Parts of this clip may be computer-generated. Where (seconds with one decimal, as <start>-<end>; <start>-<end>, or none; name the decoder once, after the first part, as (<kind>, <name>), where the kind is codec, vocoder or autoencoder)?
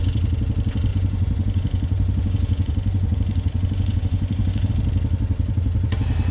0.9-4.7 (vocoder, Vocos)